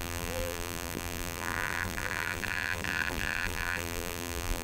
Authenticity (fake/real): fake